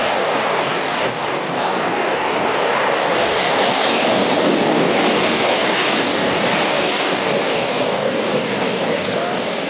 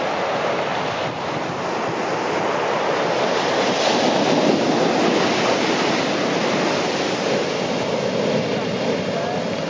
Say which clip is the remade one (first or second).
first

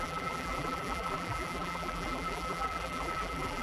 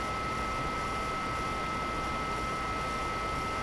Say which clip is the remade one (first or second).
first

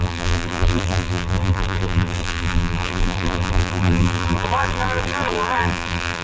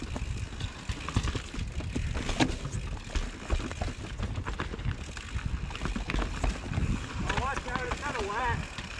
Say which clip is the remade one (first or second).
first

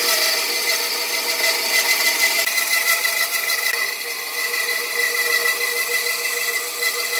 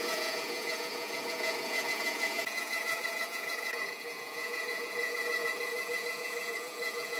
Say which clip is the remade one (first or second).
second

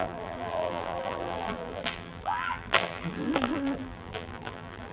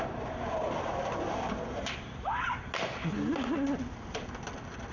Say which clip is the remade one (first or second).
first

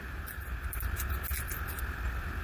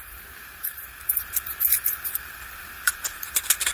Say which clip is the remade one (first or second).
second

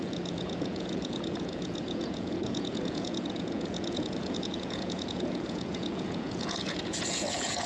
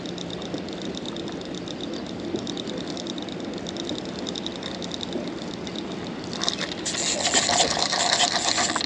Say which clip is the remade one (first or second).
first